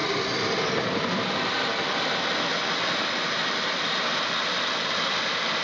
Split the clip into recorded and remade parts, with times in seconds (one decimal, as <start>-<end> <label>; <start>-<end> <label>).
0.0-1.7 remade; 1.7-3.6 recorded; 3.6-5.6 remade